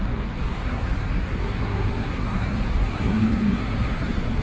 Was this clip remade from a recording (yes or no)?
yes